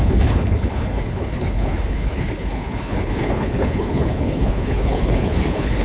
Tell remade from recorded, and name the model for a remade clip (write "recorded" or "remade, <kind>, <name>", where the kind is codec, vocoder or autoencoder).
remade, codec, HILCodec